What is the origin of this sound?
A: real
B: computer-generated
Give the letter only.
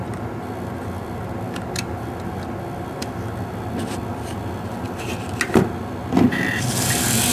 A